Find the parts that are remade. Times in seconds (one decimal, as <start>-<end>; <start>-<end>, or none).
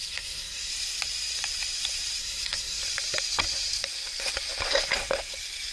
0.0-0.7; 2.2-2.8